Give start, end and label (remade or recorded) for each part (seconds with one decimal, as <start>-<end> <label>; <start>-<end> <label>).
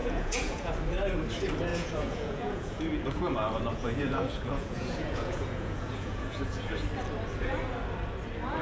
0.0-0.7 remade; 0.7-1.7 recorded; 1.7-2.8 remade; 2.8-3.7 recorded; 3.7-6.7 remade; 6.7-8.6 recorded